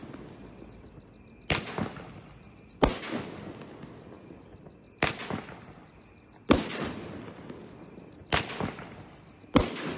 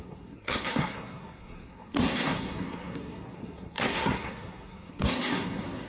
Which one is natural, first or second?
first